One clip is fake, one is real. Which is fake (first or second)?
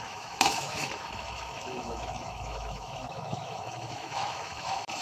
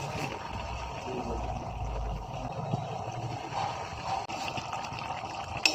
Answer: first